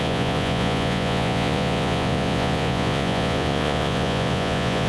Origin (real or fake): fake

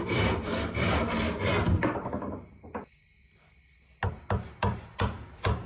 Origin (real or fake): real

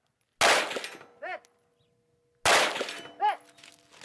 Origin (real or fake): real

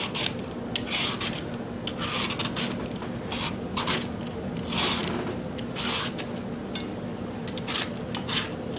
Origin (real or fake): real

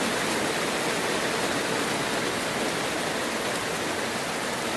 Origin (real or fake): real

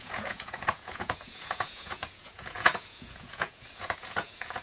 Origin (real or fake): fake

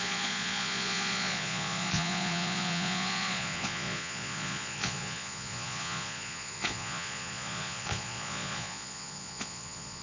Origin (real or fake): fake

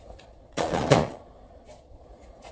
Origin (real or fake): fake